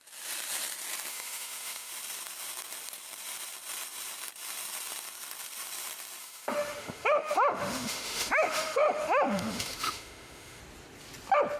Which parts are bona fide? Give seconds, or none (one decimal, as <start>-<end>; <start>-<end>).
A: 0.0-1.1; 1.9-6.2; 10.6-11.6